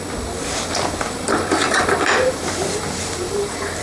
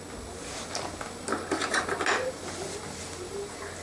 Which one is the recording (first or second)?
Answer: second